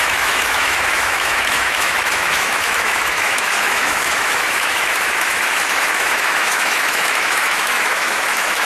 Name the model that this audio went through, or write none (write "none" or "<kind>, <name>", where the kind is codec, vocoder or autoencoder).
autoencoder, DAC-VAE